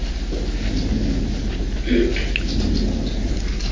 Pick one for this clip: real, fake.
real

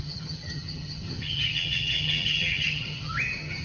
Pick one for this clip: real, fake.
fake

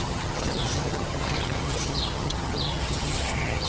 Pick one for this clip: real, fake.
fake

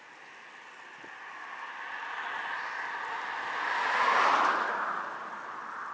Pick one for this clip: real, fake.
real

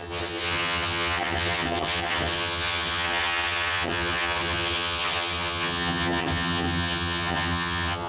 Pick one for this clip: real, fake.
fake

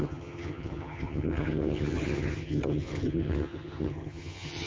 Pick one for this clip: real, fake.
fake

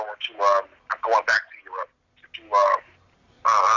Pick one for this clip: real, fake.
real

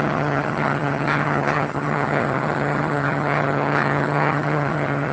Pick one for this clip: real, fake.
fake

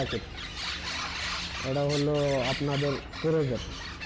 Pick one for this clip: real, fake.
real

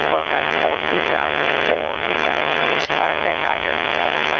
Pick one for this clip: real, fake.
fake